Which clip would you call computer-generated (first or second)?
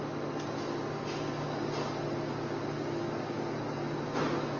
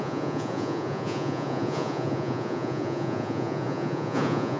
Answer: second